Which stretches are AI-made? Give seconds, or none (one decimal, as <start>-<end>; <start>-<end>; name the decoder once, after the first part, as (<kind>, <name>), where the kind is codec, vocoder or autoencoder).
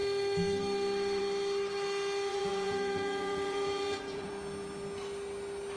2.3-4.3 (vocoder, Vocos)